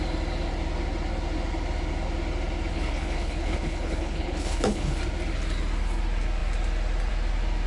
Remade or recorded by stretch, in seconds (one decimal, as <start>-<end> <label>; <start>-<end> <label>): 0.0-2.7 recorded; 2.7-5.0 remade; 5.0-7.7 recorded